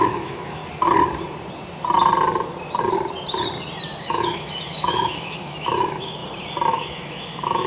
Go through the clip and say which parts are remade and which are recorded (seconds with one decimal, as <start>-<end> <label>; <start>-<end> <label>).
0.0-0.6 remade; 0.6-4.0 recorded; 4.0-6.2 remade; 6.2-6.7 recorded; 6.7-7.7 remade